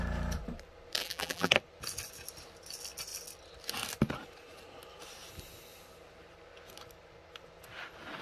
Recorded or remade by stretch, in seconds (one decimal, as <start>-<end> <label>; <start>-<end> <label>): 0.0-1.0 recorded; 1.0-1.5 remade; 1.5-8.2 recorded